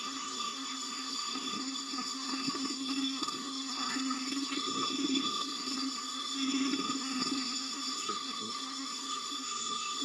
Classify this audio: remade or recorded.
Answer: remade